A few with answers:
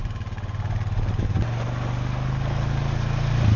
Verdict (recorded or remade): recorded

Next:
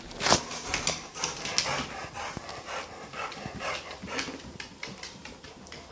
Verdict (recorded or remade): recorded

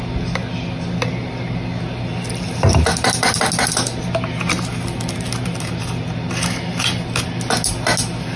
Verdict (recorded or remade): recorded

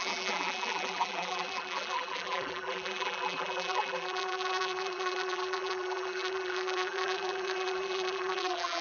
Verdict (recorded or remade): remade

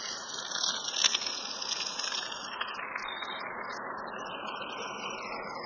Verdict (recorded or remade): recorded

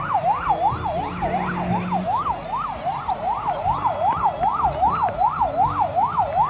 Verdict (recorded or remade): recorded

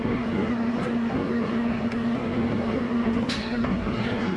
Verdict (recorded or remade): remade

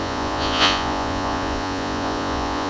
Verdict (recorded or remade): remade